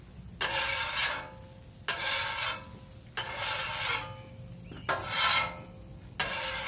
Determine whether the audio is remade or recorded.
recorded